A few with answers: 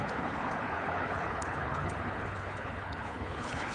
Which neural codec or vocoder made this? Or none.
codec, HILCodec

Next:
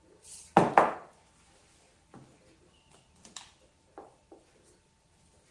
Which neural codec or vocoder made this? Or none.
none